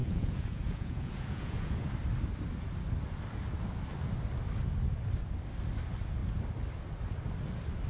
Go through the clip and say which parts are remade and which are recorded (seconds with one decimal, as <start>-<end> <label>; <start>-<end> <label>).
0.0-1.9 remade; 1.9-7.9 recorded